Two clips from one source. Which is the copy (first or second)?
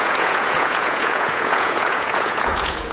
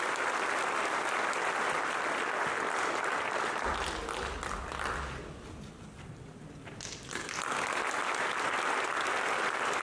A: first